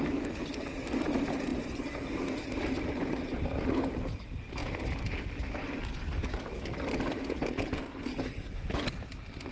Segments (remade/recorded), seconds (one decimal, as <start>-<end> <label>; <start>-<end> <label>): 0.0-9.5 recorded